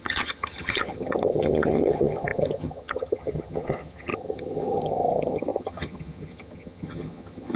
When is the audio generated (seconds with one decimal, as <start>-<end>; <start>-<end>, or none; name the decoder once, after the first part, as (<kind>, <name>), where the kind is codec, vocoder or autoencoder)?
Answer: 0.0-7.6 (vocoder, HiFi-GAN)